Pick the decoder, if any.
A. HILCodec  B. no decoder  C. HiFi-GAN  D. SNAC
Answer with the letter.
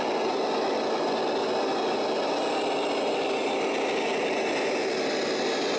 B